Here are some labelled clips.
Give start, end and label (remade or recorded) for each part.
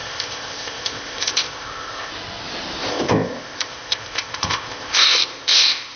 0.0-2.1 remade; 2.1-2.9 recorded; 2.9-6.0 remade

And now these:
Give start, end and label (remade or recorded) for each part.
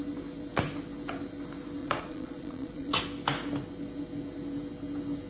0.0-1.8 recorded; 1.8-3.0 remade; 3.0-5.3 recorded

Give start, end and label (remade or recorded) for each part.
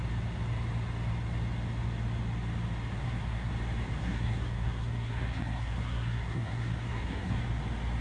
0.0-3.0 recorded; 3.0-3.5 remade; 3.5-4.0 recorded; 4.0-7.4 remade; 7.4-8.0 recorded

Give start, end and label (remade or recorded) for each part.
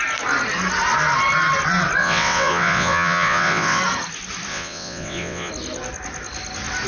0.0-2.0 recorded; 2.0-3.8 remade; 3.8-4.5 recorded; 4.5-5.5 remade; 5.5-6.9 recorded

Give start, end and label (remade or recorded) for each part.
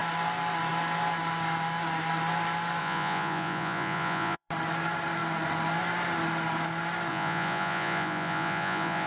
0.0-2.8 recorded; 2.8-4.5 remade; 4.5-7.1 recorded; 7.1-9.1 remade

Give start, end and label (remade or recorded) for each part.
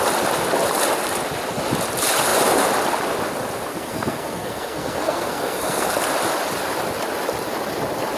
0.0-3.7 recorded; 3.7-6.0 remade; 6.0-8.2 recorded